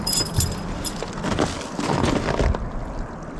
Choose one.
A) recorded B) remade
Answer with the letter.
A